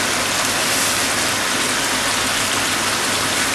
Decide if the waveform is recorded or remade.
recorded